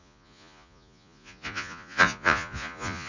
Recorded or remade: remade